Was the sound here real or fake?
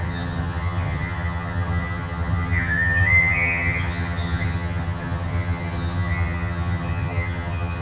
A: fake